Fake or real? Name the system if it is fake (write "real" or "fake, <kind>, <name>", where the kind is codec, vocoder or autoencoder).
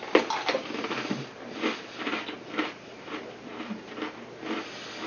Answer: real